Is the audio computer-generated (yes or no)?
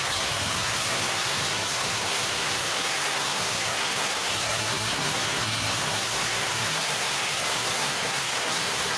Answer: yes